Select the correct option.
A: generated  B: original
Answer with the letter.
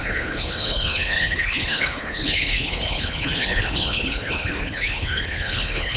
A